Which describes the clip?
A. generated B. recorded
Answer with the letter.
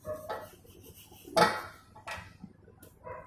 B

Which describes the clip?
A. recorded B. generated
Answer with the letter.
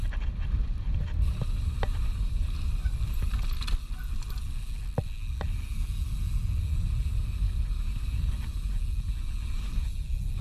A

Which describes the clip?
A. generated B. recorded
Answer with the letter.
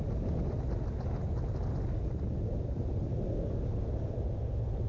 B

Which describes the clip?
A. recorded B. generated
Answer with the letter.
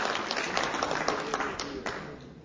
A